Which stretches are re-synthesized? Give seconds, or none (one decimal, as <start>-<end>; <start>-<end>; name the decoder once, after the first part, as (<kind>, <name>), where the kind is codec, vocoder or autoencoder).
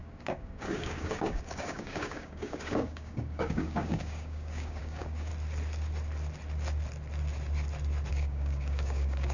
0.0-5.3 (codec, DAC); 8.1-9.3